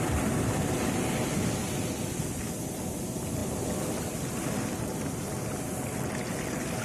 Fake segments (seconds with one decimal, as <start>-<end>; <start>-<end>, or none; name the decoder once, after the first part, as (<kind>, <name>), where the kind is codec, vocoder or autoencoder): none